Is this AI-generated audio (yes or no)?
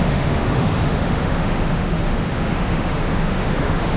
yes